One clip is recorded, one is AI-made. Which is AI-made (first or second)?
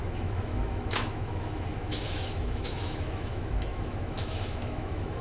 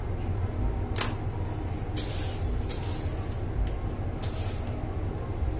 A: first